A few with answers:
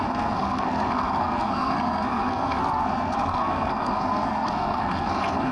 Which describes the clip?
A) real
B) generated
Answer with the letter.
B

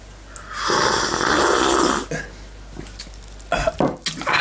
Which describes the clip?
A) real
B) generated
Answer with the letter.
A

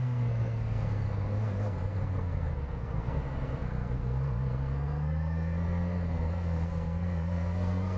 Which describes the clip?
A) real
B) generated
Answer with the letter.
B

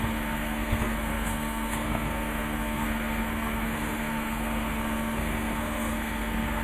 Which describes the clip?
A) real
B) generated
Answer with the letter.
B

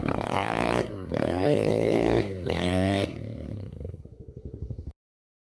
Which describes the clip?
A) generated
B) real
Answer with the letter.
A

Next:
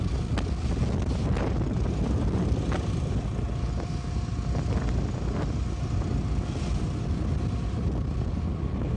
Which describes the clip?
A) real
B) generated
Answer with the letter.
A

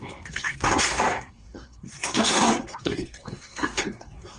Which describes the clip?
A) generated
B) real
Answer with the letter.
A